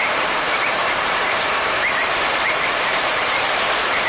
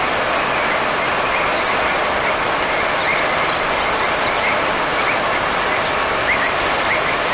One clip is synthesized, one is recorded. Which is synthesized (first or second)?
first